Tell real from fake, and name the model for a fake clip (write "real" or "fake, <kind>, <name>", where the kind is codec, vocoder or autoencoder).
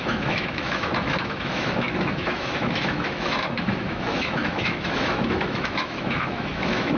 fake, autoencoder, DAC-VAE